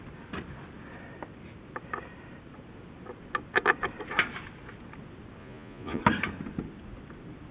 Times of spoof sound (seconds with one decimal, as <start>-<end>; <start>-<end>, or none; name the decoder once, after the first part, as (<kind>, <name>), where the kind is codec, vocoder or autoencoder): 5.4-6.0 (vocoder, Vocos)